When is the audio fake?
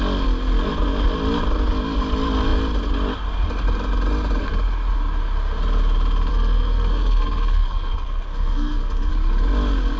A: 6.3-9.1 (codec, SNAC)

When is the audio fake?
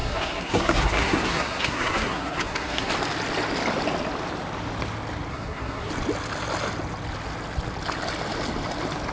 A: 0.0-2.9 (codec, SNAC); 5.3-5.9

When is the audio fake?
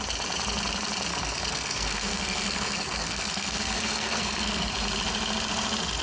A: 1.1-4.7 (codec, SNAC)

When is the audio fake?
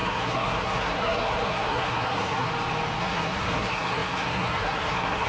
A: 0.0-2.5 (codec, SNAC); 3.0-5.3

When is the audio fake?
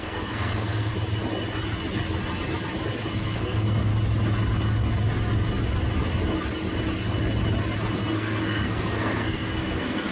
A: 0.0-0.9 (codec, SNAC); 3.1-3.9; 7.9-10.1